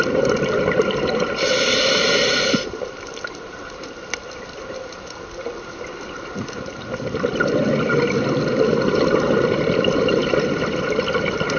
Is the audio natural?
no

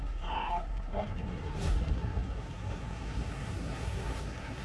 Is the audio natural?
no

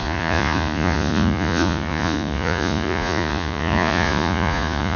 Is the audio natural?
no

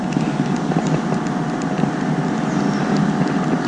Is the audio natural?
yes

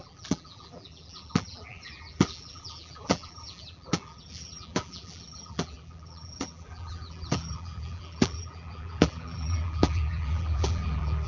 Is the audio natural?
no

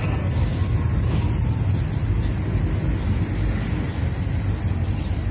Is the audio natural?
yes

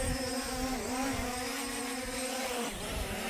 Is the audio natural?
no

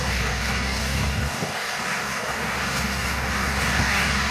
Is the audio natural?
no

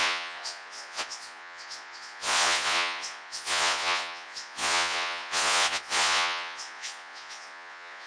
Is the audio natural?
no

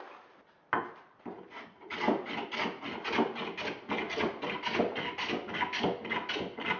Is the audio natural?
yes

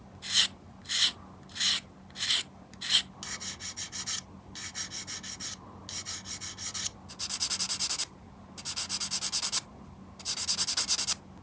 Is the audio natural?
yes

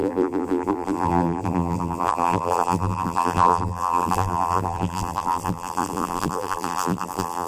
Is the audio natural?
no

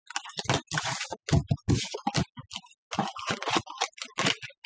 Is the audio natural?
yes